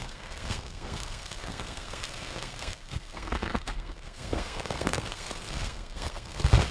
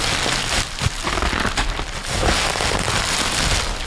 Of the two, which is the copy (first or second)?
first